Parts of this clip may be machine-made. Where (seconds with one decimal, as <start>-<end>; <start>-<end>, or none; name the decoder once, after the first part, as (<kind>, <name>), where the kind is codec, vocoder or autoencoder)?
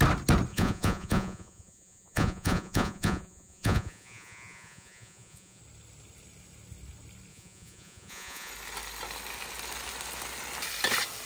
0.5-5.6 (vocoder, Vocos); 7.3-8.5